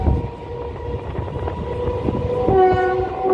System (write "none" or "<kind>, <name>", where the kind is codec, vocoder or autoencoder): none